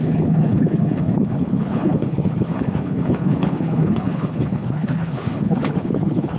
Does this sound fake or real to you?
fake